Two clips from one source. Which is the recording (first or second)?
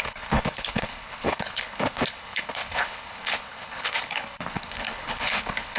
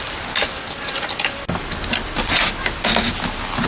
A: second